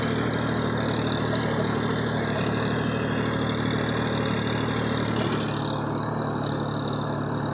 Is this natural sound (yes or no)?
yes